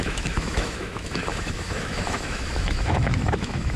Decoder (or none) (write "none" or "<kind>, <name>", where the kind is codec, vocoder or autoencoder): autoencoder, DAC-VAE